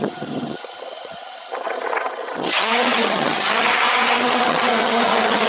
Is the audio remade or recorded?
remade